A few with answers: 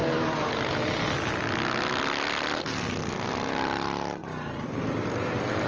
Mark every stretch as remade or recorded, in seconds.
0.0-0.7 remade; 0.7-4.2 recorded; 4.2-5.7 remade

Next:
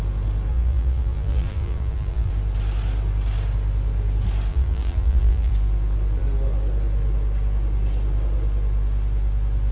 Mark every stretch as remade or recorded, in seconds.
0.0-0.5 recorded; 0.5-2.3 remade; 2.3-4.5 recorded; 4.5-5.5 remade; 5.5-9.7 recorded

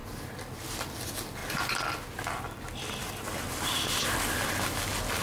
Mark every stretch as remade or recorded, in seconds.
0.0-5.2 recorded

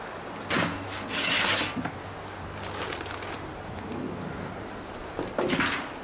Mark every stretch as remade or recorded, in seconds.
0.0-6.0 recorded

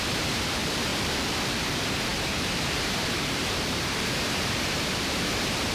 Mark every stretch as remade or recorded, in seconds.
0.0-0.9 remade; 0.9-1.5 recorded; 1.5-5.7 remade

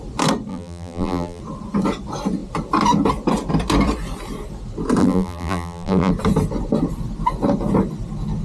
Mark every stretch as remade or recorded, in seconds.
0.0-0.5 recorded; 0.5-1.4 remade; 1.4-5.0 recorded; 5.0-6.1 remade; 6.1-8.4 recorded